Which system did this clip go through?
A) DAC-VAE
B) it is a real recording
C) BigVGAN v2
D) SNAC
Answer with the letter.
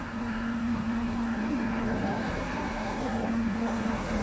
D